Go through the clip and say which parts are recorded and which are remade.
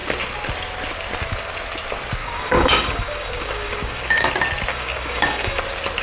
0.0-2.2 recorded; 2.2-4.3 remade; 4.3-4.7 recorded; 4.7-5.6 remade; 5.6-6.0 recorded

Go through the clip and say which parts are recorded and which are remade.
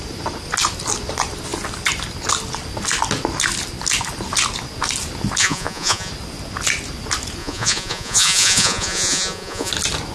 0.0-5.4 recorded; 5.4-6.1 remade; 6.1-7.4 recorded; 7.4-9.7 remade; 9.7-10.1 recorded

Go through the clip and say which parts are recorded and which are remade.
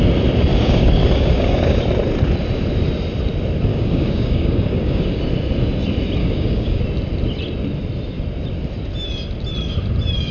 0.0-0.5 recorded; 0.5-1.8 remade; 1.8-3.7 recorded; 3.7-5.2 remade; 5.2-6.2 recorded; 6.2-6.8 remade; 6.8-10.3 recorded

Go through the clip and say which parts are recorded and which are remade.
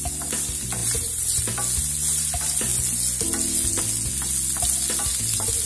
0.0-0.8 recorded; 0.8-1.4 remade; 1.4-5.7 recorded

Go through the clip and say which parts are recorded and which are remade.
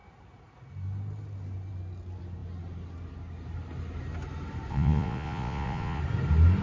0.0-4.7 recorded; 4.7-6.0 remade; 6.0-6.6 recorded